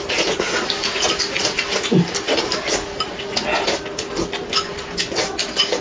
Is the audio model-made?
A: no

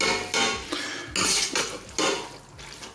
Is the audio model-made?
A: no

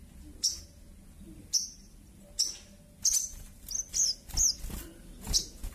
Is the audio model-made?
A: no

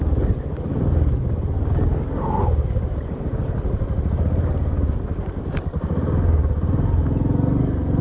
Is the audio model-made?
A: no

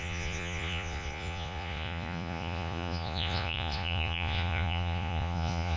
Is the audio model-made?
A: yes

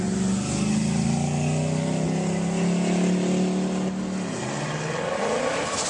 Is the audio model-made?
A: no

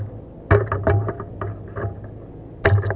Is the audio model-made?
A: no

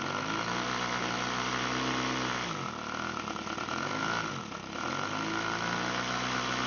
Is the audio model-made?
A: no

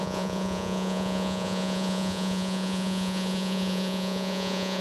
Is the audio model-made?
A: yes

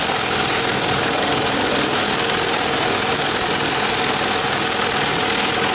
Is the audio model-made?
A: no